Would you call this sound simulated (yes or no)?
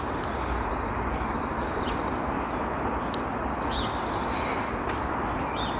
no